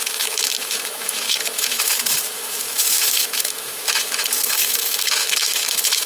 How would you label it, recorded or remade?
remade